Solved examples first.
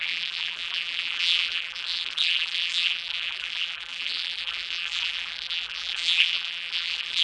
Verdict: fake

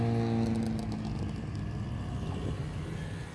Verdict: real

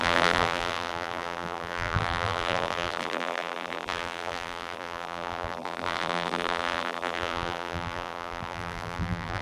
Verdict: fake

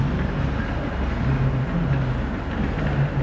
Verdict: real